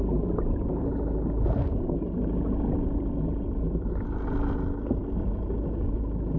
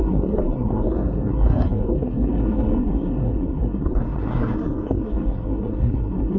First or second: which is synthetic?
second